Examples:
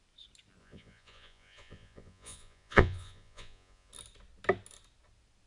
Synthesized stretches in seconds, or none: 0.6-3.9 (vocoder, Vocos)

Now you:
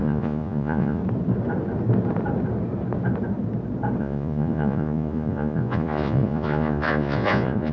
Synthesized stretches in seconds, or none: 0.0-1.0 (vocoder, Vocos); 4.0-7.7